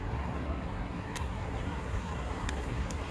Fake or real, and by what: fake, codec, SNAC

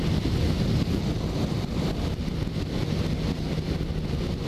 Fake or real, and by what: real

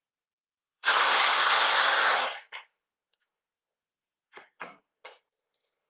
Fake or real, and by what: fake, codec, SNAC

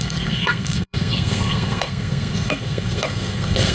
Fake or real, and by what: fake, codec, SNAC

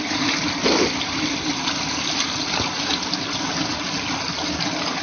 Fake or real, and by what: real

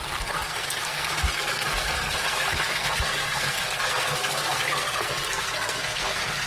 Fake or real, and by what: fake, codec, SNAC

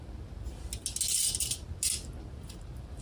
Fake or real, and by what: real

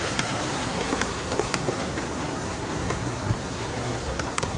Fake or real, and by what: fake, codec, SNAC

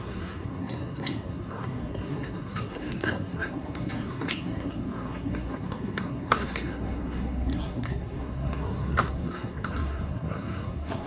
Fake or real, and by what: fake, codec, SNAC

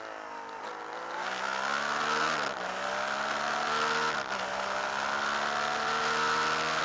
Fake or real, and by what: real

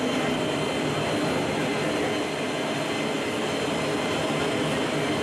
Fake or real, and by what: real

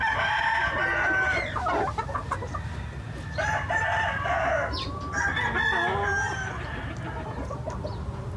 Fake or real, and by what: real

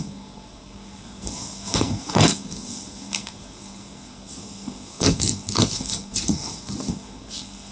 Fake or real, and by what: fake, codec, SNAC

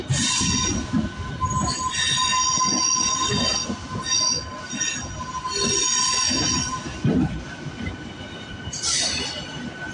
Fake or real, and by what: real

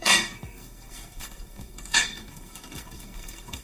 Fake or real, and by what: fake, codec, SNAC